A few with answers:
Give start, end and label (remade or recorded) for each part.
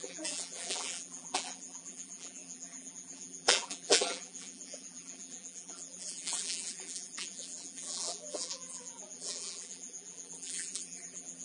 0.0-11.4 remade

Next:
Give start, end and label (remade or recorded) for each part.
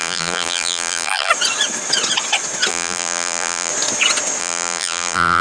0.0-1.3 remade; 1.3-2.7 recorded; 2.7-3.7 remade; 3.7-4.4 recorded; 4.4-5.4 remade